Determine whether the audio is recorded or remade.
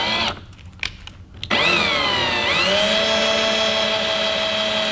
recorded